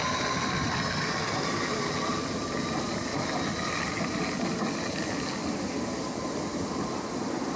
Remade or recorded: recorded